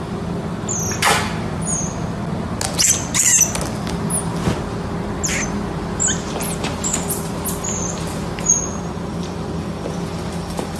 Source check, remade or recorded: recorded